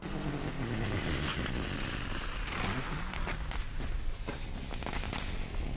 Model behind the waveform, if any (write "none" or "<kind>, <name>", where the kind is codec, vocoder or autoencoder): none